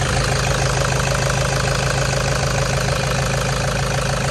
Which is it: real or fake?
real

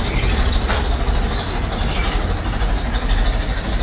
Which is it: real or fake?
real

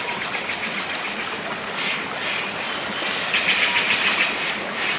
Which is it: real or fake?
real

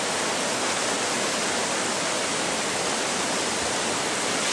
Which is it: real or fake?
fake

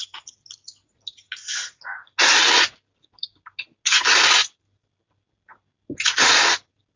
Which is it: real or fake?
real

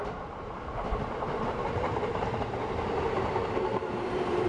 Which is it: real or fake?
fake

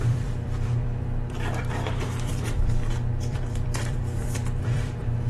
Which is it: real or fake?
fake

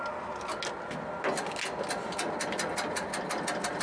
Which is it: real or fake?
real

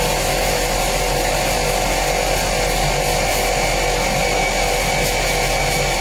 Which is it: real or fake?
real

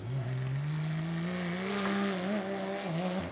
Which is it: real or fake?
real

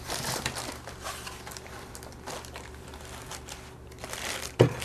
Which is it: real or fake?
fake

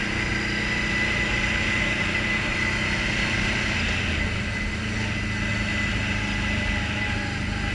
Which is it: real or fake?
real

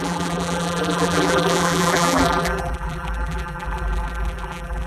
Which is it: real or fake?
fake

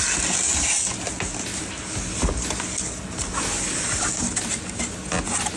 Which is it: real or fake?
real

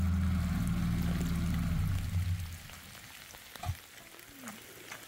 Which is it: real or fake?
real